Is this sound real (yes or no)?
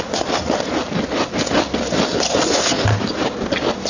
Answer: yes